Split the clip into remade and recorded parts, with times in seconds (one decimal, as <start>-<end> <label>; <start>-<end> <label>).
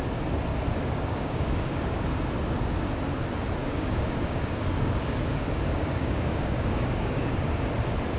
0.0-0.5 recorded; 0.5-2.0 remade; 2.0-3.6 recorded; 3.6-7.7 remade; 7.7-8.2 recorded